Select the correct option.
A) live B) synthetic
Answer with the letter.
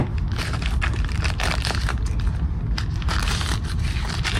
A